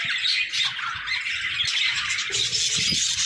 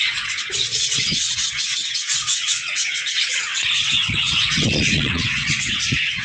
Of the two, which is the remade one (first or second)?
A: second